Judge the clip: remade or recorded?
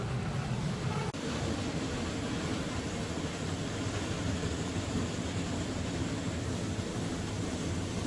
recorded